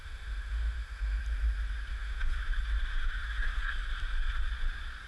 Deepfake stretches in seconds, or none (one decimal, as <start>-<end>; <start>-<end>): 0.0-1.2; 1.9-2.4; 2.9-3.6